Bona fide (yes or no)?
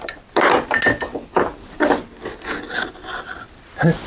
yes